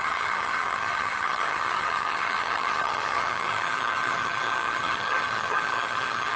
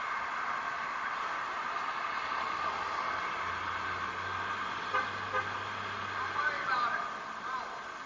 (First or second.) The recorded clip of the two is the second